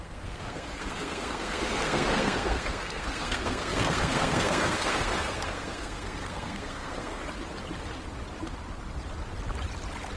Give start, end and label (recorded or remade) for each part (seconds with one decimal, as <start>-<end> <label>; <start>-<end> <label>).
0.0-7.2 remade; 7.2-10.2 recorded